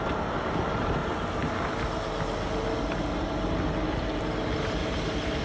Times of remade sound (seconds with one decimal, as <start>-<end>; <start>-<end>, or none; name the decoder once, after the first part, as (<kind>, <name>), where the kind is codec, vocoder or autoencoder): none